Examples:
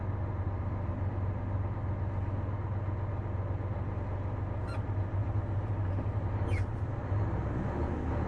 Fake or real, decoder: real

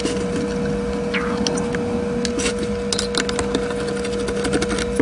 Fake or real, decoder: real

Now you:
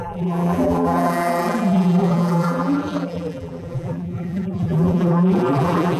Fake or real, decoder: fake, vocoder, BigVGAN v2